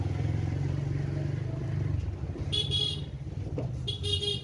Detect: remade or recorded recorded